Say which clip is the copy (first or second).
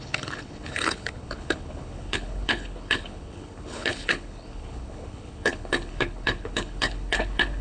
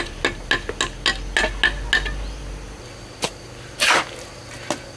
first